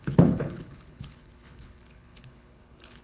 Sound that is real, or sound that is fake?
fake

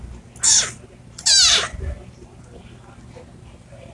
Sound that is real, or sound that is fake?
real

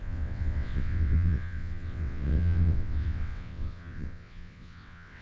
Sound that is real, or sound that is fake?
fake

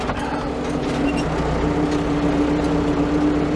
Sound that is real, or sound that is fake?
real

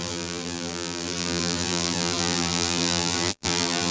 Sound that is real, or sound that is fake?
fake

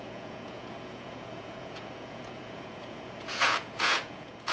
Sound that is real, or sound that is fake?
fake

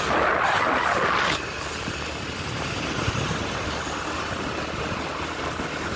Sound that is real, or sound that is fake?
real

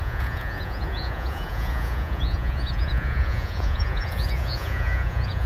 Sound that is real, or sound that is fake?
fake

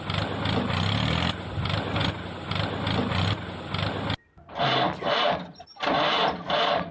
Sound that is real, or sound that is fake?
real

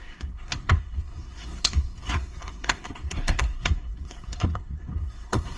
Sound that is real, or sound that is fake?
fake